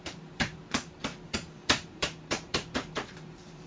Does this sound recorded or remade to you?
remade